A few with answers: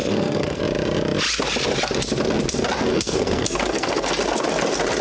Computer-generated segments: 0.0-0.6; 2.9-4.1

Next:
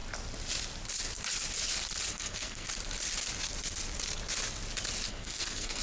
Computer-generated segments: 2.1-2.7; 5.1-5.8

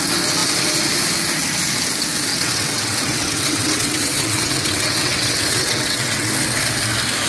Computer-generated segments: 2.3-6.3

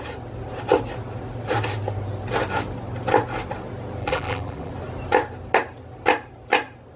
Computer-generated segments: 4.0-4.7

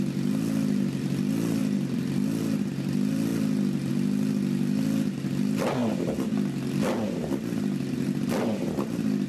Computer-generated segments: none

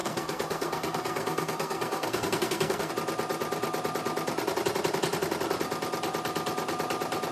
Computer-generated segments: 0.0-2.9

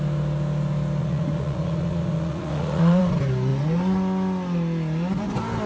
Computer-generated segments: 1.0-3.0